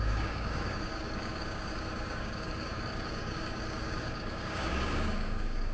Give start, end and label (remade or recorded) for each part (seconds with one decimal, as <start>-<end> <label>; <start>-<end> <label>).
0.0-5.7 remade